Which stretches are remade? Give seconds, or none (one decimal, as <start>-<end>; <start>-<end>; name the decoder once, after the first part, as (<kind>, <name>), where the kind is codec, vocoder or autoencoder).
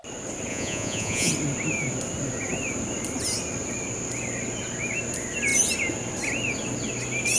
0.5-1.3 (vocoder, Vocos)